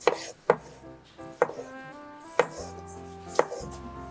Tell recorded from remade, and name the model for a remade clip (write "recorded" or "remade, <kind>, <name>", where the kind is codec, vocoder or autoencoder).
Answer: recorded